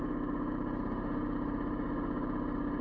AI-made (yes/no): no